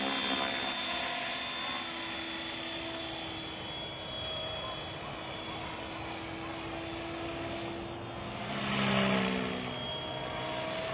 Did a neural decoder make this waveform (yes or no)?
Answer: no